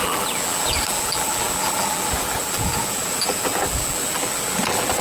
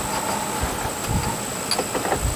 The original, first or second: second